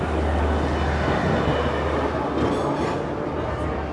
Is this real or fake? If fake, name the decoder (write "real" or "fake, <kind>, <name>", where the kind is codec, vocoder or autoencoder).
real